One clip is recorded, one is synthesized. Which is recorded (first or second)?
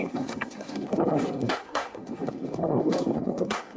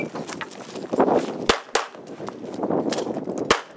second